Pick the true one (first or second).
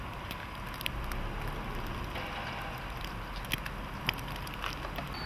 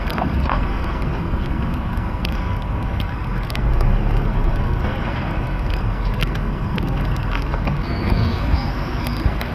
first